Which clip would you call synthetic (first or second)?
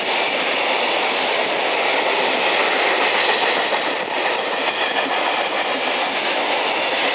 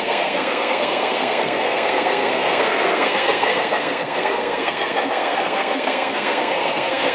second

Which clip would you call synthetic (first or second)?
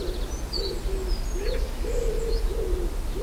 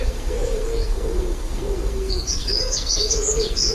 second